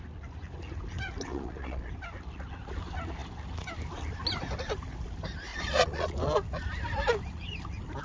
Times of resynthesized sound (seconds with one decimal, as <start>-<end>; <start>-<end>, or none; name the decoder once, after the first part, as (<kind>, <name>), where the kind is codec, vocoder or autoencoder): 1.3-1.9 (vocoder, Vocos); 5.5-6.3